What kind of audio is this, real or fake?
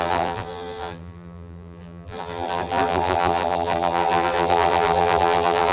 fake